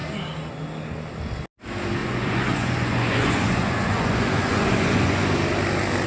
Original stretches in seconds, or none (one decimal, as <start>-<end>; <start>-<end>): 0.0-2.0; 5.2-6.1